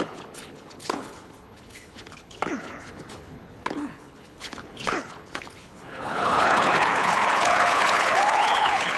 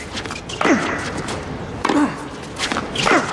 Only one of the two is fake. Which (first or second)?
first